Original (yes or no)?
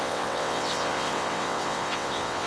no